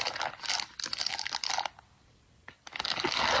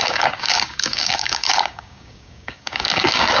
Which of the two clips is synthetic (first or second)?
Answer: second